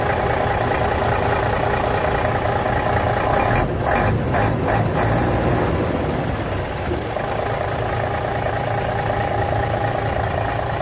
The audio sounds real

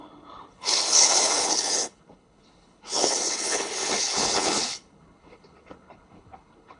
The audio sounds fake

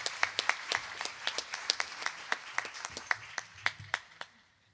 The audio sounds fake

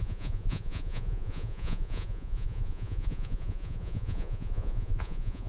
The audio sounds fake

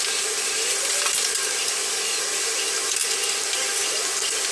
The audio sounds real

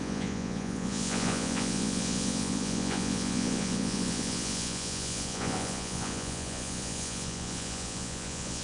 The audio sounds fake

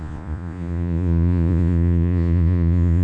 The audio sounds fake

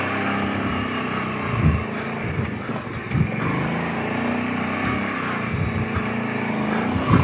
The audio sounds real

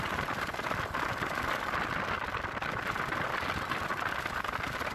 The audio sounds real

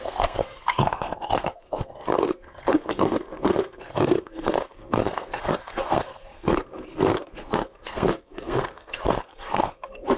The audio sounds fake